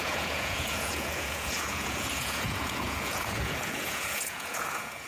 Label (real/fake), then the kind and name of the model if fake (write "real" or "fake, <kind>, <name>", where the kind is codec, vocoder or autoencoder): fake, vocoder, Vocos